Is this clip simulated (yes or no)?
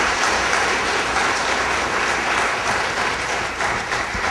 yes